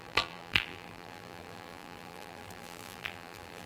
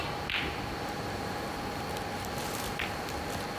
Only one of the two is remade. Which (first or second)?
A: first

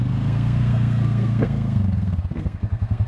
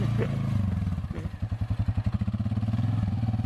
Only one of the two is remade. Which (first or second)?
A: first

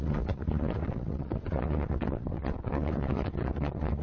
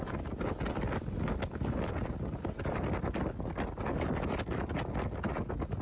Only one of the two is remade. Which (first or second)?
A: first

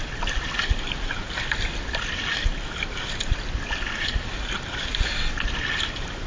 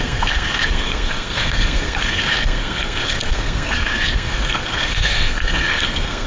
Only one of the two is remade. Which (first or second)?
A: second